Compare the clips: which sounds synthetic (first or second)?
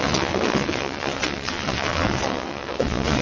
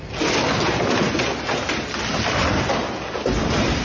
first